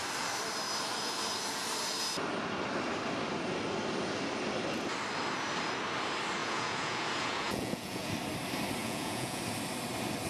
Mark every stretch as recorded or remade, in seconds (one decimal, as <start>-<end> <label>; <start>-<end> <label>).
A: 0.0-6.4 recorded; 6.4-8.1 remade; 8.1-8.8 recorded; 8.8-9.4 remade; 9.4-10.3 recorded